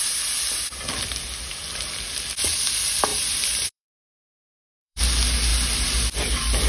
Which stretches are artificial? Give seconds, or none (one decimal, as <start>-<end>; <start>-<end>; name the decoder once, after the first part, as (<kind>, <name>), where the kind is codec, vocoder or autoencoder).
3.1-5.0 (vocoder, BigVGAN v2); 5.5-6.7

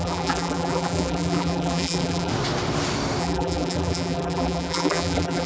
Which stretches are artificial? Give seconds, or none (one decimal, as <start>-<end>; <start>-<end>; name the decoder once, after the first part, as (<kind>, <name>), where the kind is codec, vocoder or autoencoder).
0.0-2.3 (vocoder, BigVGAN v2); 3.2-5.5

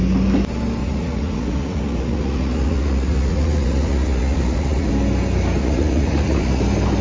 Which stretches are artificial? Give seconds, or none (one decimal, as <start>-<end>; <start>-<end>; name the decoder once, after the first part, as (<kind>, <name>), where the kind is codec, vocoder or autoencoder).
0.8-4.9 (vocoder, Vocos); 5.6-6.6

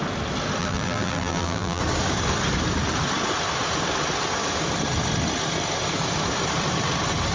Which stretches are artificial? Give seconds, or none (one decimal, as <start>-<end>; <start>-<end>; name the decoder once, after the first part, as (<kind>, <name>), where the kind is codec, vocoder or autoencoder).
0.6-1.8 (vocoder, BigVGAN v2)